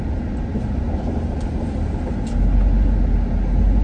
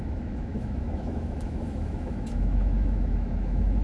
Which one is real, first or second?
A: first